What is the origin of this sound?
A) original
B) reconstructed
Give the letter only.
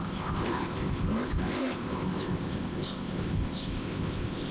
B